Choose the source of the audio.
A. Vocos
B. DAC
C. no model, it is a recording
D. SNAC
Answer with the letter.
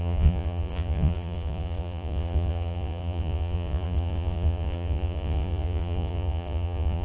A